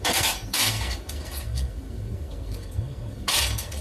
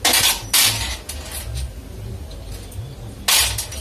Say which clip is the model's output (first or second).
first